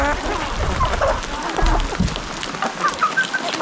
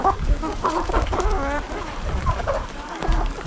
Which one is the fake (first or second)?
second